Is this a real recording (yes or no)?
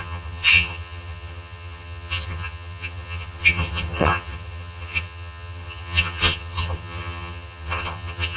no